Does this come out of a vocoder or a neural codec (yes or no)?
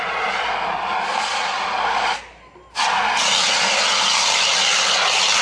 no